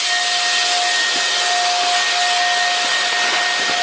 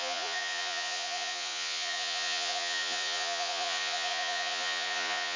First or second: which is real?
first